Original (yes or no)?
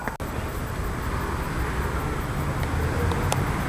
yes